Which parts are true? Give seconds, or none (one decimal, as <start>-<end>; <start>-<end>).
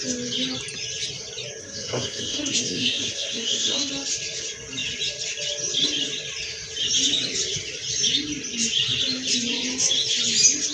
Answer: 0.0-1.6; 3.9-10.7